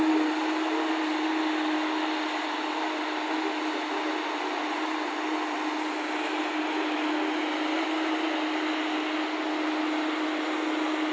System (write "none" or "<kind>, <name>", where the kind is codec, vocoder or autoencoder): none